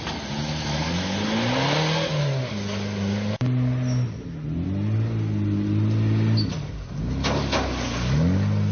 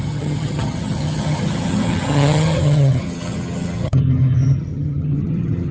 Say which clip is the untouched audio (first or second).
first